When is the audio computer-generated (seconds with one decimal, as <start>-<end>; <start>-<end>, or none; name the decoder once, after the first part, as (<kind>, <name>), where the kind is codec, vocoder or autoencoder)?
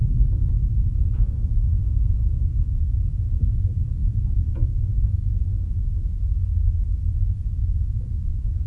1.0-5.9 (vocoder, Vocos); 7.6-8.7